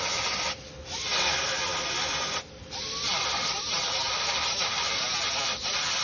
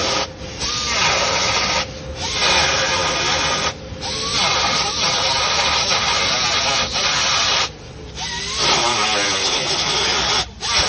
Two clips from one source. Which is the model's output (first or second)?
first